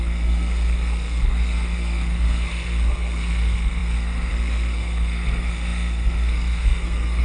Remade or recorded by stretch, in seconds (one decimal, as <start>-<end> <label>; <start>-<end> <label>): 0.0-7.2 remade